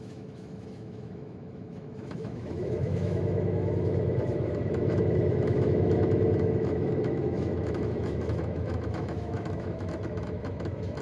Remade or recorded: remade